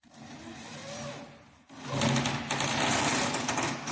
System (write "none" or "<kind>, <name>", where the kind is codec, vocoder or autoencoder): none